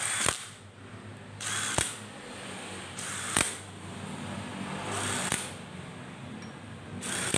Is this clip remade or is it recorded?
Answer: recorded